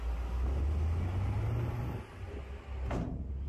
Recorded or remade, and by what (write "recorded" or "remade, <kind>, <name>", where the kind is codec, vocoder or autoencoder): recorded